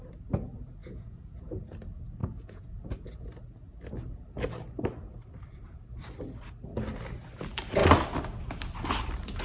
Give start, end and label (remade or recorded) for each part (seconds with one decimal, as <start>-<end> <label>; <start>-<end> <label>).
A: 0.0-0.8 recorded; 0.8-1.6 remade; 1.6-2.2 recorded; 2.2-2.7 remade; 2.7-9.4 recorded

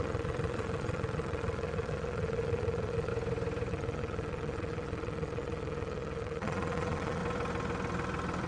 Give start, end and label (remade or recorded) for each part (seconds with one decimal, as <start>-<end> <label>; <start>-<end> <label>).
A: 0.0-3.1 remade; 3.1-3.7 recorded; 3.7-7.2 remade; 7.2-8.5 recorded

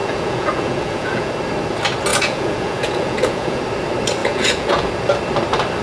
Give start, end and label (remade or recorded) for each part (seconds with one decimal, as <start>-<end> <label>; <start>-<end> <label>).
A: 0.0-1.3 remade; 1.3-2.1 recorded; 2.1-3.6 remade; 3.6-4.2 recorded; 4.2-4.9 remade; 4.9-5.8 recorded

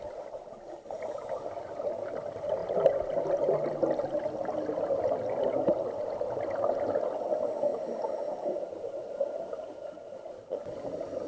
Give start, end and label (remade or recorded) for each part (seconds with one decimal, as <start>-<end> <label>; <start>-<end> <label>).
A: 0.0-11.3 recorded